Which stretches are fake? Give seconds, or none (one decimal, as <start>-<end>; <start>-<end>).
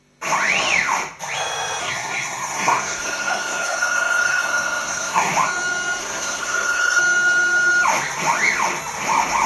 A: 1.8-5.3; 6.0-7.0